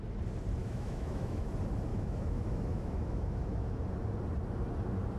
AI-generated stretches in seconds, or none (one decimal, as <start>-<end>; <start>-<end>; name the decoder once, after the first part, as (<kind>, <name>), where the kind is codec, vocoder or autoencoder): 0.6-1.5 (autoencoder, DAC-VAE); 1.9-3.8